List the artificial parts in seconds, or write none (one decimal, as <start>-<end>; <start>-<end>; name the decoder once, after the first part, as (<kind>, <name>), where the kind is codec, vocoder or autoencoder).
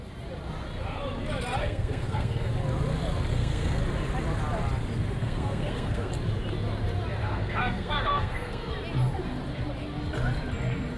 1.6-2.5 (codec, SNAC); 3.3-3.8; 5.2-6.1; 7.2-8.7